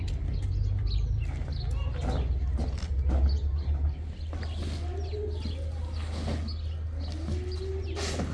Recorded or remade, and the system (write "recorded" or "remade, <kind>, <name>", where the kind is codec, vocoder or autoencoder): recorded